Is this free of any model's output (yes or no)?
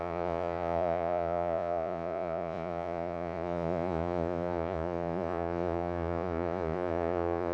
no